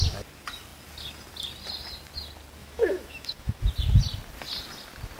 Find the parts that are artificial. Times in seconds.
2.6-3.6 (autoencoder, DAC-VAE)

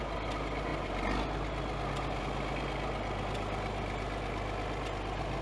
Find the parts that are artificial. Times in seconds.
none